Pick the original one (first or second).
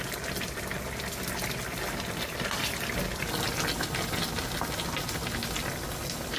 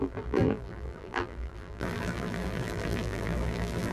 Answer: first